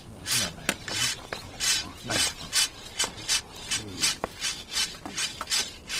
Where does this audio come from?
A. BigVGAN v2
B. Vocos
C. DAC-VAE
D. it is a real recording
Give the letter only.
D